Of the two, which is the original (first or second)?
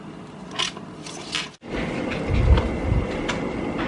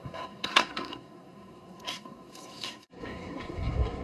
first